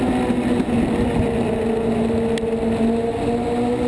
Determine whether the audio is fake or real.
real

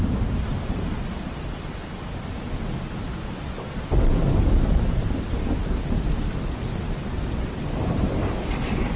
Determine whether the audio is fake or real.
real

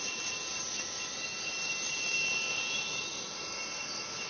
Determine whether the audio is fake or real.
real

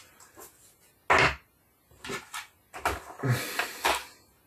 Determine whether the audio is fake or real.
real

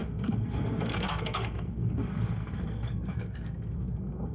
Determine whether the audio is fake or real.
fake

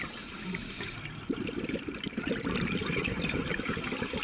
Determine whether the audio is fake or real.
real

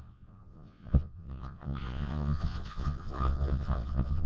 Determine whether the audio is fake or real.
fake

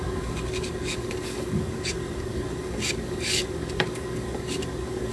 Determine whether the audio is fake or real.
fake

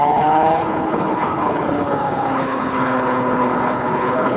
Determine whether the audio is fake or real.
fake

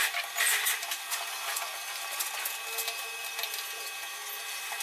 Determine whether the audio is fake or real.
real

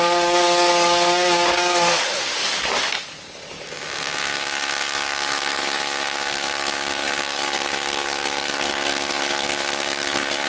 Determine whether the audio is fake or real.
fake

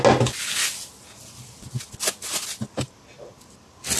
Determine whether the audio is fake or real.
real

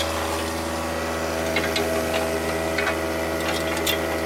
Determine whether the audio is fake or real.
real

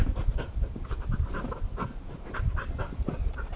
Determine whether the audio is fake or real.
real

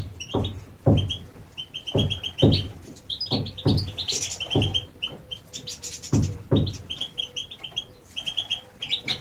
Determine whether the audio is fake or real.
real